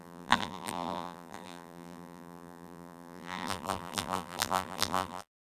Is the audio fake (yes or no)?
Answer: yes